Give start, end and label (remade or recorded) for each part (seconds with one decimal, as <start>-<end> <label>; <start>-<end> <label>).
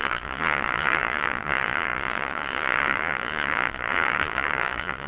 0.0-5.1 remade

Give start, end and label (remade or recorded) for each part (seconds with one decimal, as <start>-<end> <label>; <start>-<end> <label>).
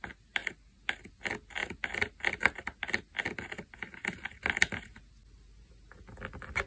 0.0-6.7 recorded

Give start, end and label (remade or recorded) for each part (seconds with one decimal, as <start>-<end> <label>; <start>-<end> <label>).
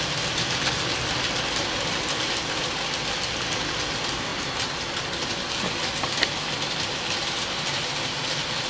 0.0-8.7 recorded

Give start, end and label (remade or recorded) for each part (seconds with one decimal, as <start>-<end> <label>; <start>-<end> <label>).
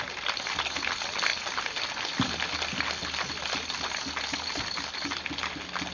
0.0-5.9 recorded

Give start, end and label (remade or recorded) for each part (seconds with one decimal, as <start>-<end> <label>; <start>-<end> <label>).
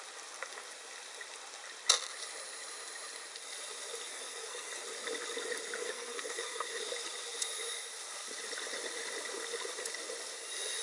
0.0-4.1 recorded; 4.1-4.8 remade; 4.8-5.8 recorded; 5.8-6.8 remade; 6.8-10.8 recorded